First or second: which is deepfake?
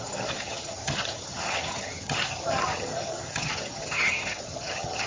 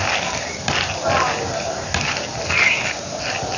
first